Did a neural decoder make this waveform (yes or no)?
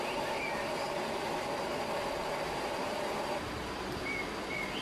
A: no